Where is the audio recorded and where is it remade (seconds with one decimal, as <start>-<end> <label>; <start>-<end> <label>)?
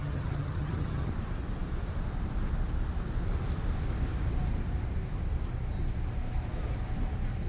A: 0.0-1.1 remade; 1.1-7.5 recorded